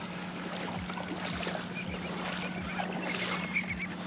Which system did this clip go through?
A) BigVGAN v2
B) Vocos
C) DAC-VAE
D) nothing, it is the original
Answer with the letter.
D